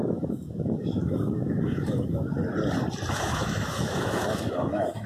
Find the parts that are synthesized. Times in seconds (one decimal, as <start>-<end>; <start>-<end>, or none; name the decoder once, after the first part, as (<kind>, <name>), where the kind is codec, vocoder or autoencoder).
0.0-2.4 (autoencoder, DAC-VAE); 3.1-5.1